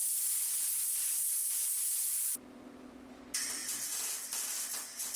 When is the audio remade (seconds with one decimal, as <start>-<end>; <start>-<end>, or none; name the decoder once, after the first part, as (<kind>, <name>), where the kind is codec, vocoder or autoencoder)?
1.4-3.2 (vocoder, BigVGAN v2); 3.6-4.7